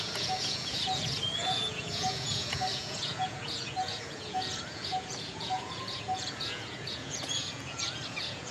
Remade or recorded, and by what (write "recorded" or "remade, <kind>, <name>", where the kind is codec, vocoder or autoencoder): remade, vocoder, Vocos